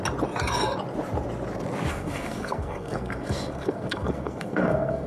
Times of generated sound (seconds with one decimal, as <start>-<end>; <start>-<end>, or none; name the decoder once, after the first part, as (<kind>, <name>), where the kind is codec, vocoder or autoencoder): 1.9-5.1 (codec, SNAC)